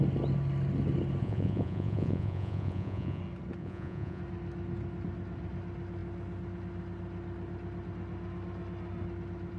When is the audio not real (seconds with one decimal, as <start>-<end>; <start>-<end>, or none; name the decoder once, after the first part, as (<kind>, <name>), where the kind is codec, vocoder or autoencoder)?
1.2-3.2 (vocoder, Vocos); 3.6-4.2